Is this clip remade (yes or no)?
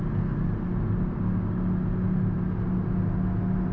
no